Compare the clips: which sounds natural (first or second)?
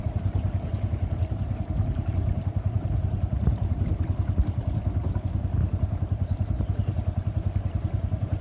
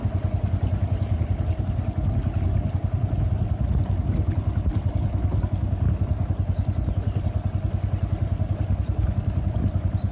second